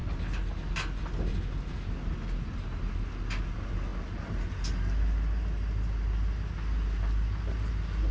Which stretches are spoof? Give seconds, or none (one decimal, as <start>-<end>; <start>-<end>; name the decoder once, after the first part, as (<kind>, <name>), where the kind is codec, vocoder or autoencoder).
none